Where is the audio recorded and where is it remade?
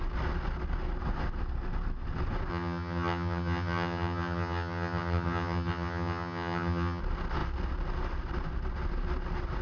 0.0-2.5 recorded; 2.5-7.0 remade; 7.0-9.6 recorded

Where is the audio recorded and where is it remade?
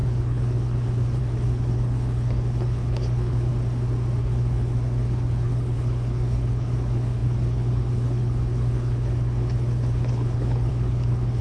0.0-3.5 remade; 3.5-4.2 recorded; 4.2-11.4 remade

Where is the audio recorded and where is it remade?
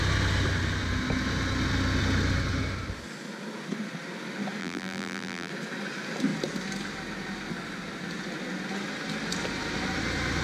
0.0-4.6 recorded; 4.6-5.5 remade; 5.5-10.4 recorded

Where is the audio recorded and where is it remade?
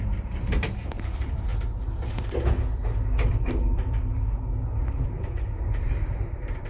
0.0-1.5 remade; 1.5-3.3 recorded; 3.3-4.1 remade; 4.1-4.8 recorded; 4.8-6.7 remade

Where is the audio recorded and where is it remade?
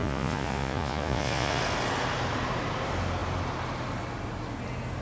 0.0-1.6 remade; 1.6-5.0 recorded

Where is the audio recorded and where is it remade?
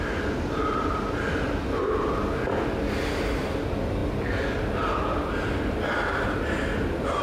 0.0-7.2 recorded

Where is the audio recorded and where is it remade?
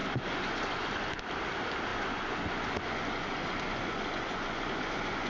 0.0-1.2 remade; 1.2-1.9 recorded; 1.9-5.3 remade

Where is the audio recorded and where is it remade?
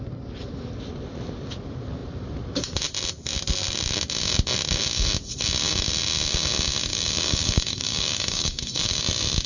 0.0-6.9 recorded; 6.9-9.0 remade; 9.0-9.5 recorded